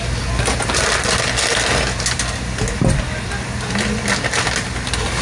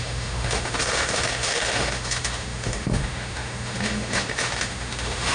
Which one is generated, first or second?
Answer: second